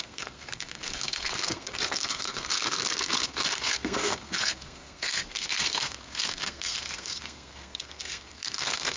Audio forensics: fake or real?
fake